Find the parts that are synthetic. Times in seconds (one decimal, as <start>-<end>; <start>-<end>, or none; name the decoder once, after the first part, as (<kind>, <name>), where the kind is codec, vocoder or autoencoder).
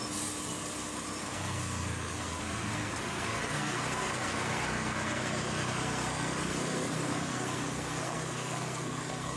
1.2-9.4 (codec, SNAC)